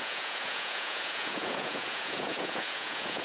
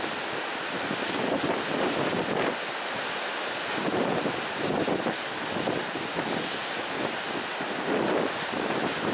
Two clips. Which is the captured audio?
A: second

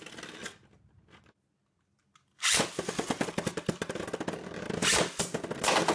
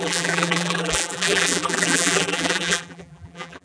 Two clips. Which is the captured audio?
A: first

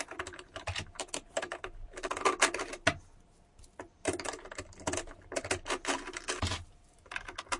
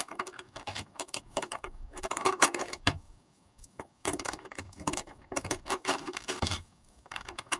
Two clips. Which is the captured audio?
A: first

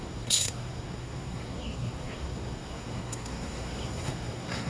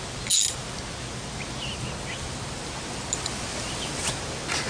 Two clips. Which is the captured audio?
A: second